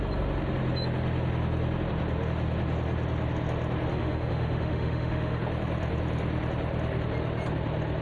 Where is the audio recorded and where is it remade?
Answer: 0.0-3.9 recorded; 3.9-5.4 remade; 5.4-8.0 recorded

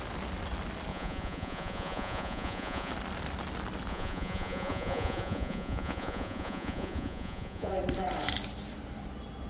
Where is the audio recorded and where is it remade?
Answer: 0.0-0.9 recorded; 0.9-2.9 remade; 2.9-3.9 recorded; 3.9-7.7 remade; 7.7-9.5 recorded